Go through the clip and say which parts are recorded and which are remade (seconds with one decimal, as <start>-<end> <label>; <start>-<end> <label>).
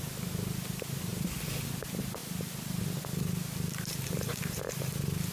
0.0-5.3 recorded